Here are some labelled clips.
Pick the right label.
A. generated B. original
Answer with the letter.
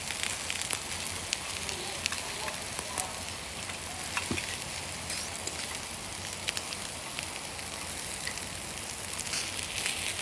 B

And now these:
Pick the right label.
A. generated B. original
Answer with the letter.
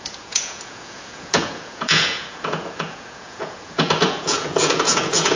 A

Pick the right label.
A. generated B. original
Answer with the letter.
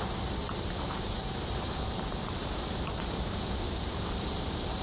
A